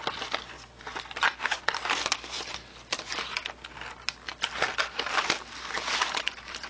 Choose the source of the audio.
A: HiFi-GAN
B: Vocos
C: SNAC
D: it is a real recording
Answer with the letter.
D